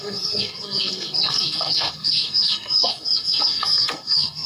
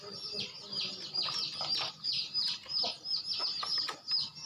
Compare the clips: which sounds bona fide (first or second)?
second